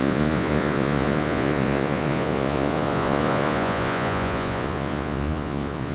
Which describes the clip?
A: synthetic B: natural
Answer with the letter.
A